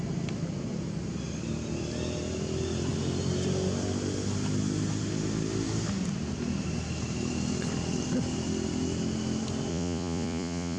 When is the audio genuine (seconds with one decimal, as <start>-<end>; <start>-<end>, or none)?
0.0-9.7